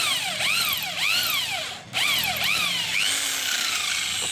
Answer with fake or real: real